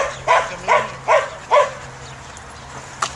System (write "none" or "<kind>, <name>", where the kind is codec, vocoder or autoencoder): none